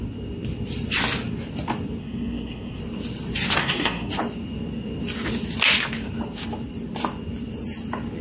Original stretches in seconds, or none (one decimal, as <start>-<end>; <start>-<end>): 0.0-2.0; 2.8-3.6; 4.1-8.2